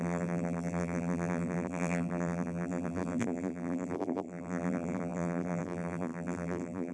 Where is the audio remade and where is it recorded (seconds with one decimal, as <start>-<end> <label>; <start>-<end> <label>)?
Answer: 0.0-6.9 remade